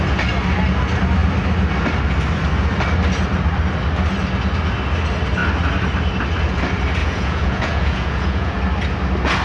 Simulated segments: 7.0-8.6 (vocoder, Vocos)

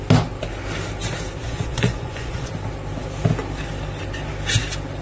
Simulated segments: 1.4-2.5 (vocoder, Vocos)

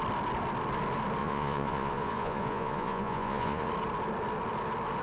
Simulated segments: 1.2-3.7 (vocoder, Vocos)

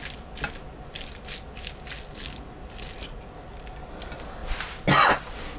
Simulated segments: none